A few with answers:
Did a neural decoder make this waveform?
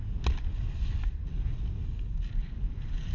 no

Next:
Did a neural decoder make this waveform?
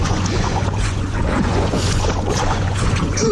yes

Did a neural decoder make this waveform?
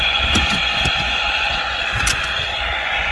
yes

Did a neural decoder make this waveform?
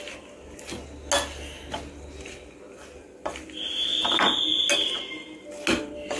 no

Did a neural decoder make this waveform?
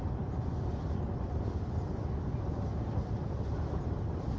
no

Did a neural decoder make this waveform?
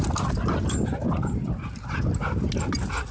no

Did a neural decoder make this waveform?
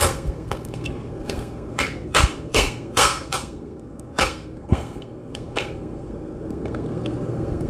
yes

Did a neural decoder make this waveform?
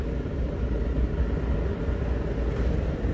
no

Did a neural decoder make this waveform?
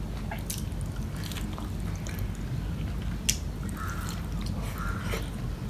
no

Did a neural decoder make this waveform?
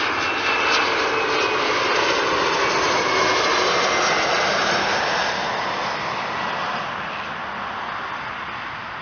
no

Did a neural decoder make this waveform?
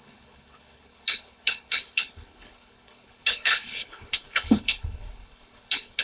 yes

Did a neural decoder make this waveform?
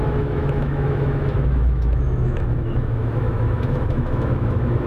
yes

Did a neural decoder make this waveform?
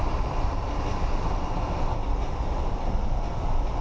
yes